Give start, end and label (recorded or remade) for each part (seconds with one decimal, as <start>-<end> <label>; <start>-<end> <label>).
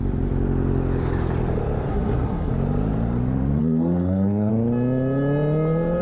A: 0.0-1.9 recorded; 1.9-2.5 remade; 2.5-3.6 recorded; 3.6-4.5 remade; 4.5-6.0 recorded